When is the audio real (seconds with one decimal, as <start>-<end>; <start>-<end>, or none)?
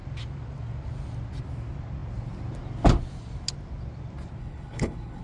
0.0-4.4